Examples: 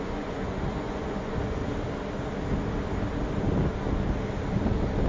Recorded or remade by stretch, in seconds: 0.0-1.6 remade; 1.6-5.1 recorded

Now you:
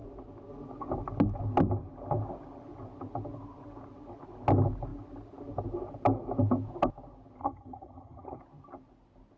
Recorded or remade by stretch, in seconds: 0.0-7.4 recorded; 7.4-8.4 remade; 8.4-9.4 recorded

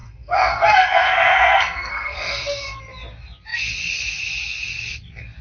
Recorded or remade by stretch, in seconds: 0.0-2.8 remade; 2.8-5.4 recorded

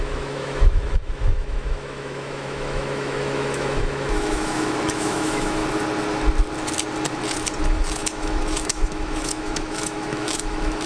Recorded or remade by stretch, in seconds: 0.0-5.6 remade; 5.6-7.6 recorded; 7.6-10.9 remade

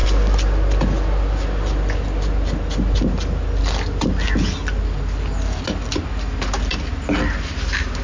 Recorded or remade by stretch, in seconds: 0.0-8.0 recorded

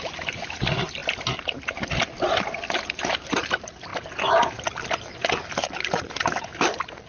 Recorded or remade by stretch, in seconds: 0.0-1.0 remade; 1.0-2.2 recorded; 2.2-3.9 remade; 3.9-4.6 recorded; 4.6-7.1 remade

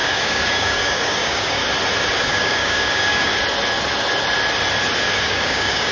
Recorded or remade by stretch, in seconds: 0.0-1.6 remade; 1.6-2.2 recorded; 2.2-3.3 remade; 3.3-5.2 recorded; 5.2-5.9 remade

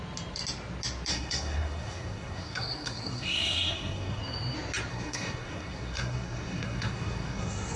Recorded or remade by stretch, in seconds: 0.0-1.1 recorded; 1.1-4.2 remade; 4.2-4.9 recorded; 4.9-7.8 remade